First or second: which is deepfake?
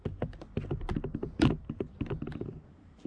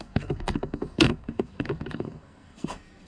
second